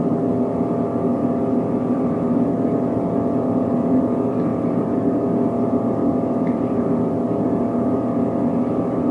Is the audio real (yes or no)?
yes